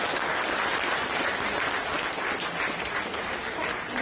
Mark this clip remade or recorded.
recorded